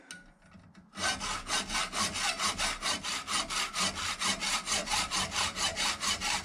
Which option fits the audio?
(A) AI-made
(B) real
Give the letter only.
B